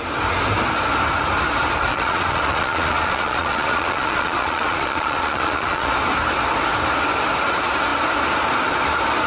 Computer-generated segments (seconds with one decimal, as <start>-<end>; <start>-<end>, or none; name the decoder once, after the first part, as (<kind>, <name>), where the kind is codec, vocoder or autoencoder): 1.9-5.9 (vocoder, Vocos)